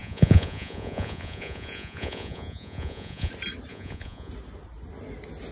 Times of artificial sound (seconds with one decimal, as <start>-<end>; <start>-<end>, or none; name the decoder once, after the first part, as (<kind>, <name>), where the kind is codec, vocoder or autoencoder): 0.0-3.3 (vocoder, Vocos); 3.7-4.3